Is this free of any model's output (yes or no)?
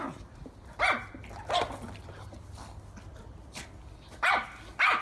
yes